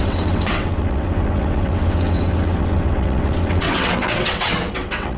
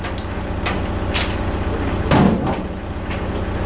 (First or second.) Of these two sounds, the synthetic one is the first